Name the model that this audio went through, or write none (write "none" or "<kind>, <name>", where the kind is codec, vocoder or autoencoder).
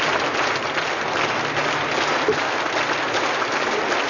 none